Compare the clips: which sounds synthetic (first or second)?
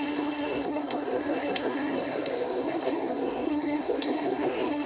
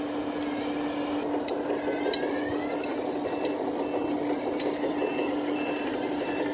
first